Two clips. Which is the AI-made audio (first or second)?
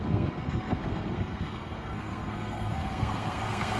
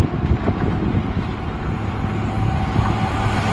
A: first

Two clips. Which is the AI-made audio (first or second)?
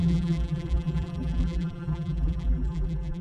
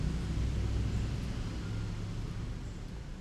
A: first